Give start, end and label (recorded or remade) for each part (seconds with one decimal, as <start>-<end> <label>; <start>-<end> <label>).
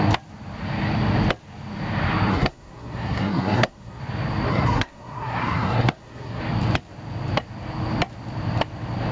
0.0-2.3 recorded; 2.3-4.0 remade; 4.0-4.5 recorded; 4.5-6.4 remade; 6.4-9.1 recorded